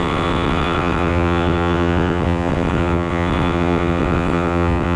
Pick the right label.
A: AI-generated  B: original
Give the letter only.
A